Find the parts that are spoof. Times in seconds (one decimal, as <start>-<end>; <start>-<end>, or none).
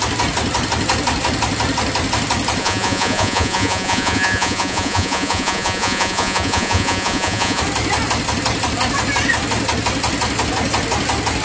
2.6-7.6